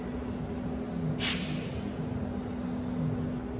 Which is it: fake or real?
real